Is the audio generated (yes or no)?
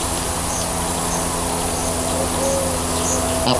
no